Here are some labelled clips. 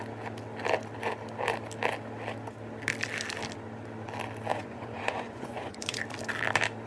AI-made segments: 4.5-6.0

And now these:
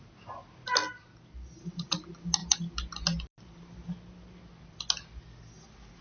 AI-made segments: none

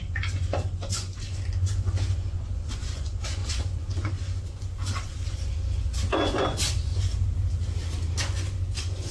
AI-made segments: 0.0-6.9; 8.2-9.1

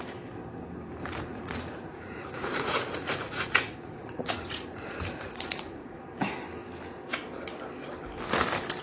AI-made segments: 1.3-6.0

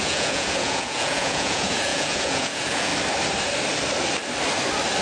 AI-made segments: 0.0-2.9

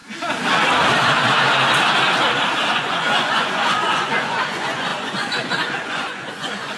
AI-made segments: 2.7-6.8